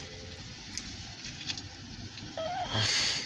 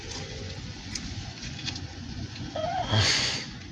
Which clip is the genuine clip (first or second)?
first